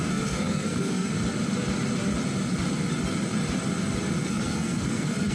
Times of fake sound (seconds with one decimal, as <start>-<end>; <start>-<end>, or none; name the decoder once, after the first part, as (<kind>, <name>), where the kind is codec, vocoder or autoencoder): 0.0-1.1 (codec, SNAC); 4.2-5.3